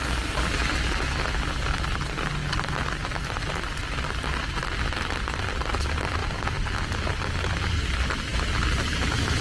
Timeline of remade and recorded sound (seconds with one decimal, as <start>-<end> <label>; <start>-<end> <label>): 0.0-9.4 recorded